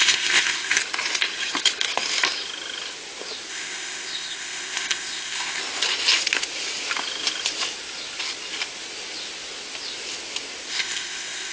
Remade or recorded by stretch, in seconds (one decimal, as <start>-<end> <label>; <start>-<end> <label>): 0.0-0.8 remade; 0.8-3.5 recorded; 3.5-5.6 remade; 5.6-10.7 recorded; 10.7-11.5 remade